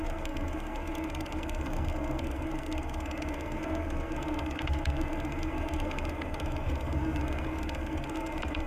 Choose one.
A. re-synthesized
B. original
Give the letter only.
A